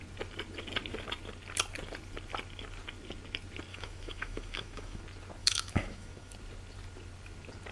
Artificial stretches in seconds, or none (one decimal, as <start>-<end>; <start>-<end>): 3.7-5.0; 5.4-6.3